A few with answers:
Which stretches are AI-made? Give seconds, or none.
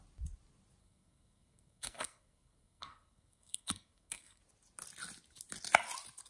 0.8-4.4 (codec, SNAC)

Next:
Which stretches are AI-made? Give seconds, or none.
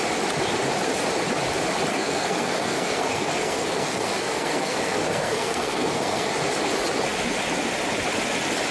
1.9-6.3 (codec, SNAC)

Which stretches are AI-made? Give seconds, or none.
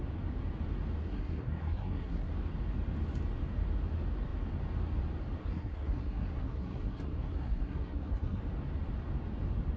1.0-2.3 (codec, SNAC); 5.4-8.4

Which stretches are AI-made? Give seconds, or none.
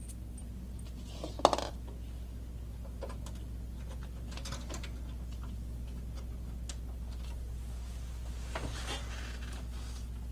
none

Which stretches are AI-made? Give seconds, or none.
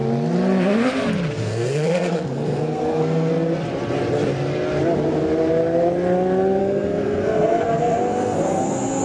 1.3-3.3 (codec, SNAC); 6.6-9.0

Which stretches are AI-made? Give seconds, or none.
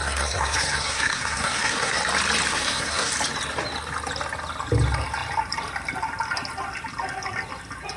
0.0-2.0 (codec, SNAC); 2.5-3.1